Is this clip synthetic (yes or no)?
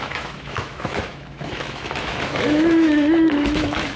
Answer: yes